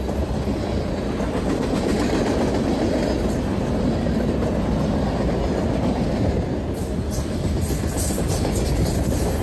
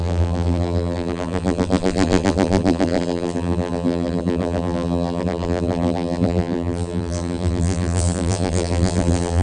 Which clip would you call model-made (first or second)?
second